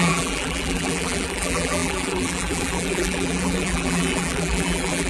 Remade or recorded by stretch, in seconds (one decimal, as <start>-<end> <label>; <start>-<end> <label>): 0.0-5.1 remade